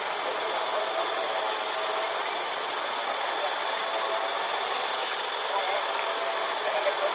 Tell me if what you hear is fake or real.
real